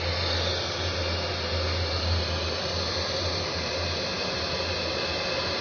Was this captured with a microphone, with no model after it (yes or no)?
yes